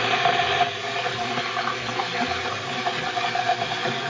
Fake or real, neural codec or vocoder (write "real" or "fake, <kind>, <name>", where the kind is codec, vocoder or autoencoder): real